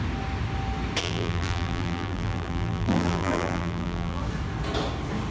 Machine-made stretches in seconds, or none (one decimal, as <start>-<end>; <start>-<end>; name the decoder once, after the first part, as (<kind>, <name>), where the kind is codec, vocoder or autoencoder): 1.0-4.2 (vocoder, BigVGAN v2)